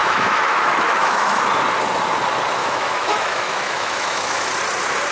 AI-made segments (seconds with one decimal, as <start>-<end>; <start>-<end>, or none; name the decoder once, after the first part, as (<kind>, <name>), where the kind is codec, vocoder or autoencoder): 0.0-1.4 (autoencoder, DAC-VAE); 2.6-4.5